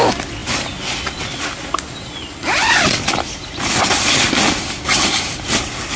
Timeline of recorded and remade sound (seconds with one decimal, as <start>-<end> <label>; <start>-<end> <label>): 0.0-6.0 recorded